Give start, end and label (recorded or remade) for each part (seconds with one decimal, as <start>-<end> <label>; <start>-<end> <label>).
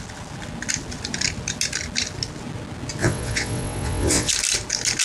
0.0-3.0 recorded; 3.0-4.3 remade; 4.3-5.0 recorded